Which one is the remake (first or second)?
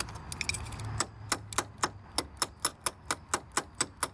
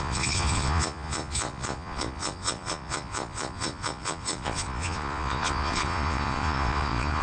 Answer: second